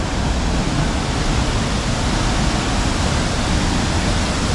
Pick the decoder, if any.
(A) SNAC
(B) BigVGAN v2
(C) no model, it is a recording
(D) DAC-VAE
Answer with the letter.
C